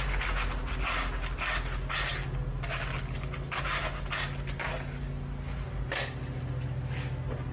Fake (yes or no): no